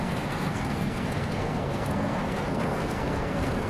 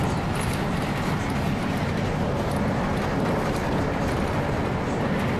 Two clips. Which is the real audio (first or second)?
second